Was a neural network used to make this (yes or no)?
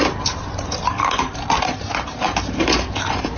yes